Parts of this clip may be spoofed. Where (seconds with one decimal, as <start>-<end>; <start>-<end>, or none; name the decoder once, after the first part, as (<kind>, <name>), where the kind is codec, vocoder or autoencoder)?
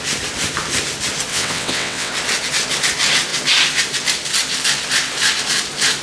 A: 1.3-2.1 (vocoder, WaveNeXt)